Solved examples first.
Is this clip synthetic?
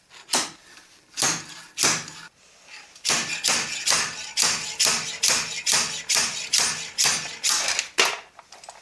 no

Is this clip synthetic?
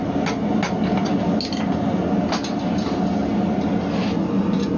no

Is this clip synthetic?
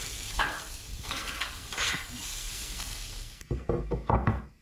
yes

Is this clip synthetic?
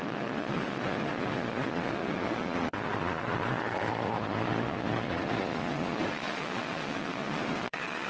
yes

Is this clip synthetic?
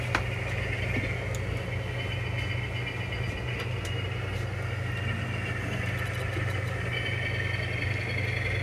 no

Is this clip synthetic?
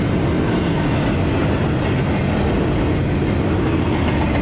no